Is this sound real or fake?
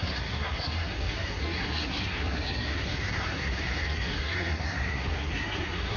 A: fake